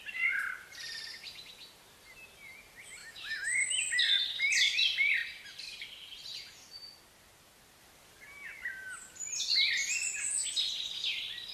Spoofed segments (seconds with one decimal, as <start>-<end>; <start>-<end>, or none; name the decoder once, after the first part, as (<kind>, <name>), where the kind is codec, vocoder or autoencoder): 3.0-3.8 (autoencoder, DAC-VAE)